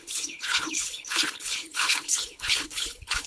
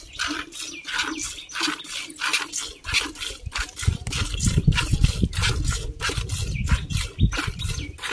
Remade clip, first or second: first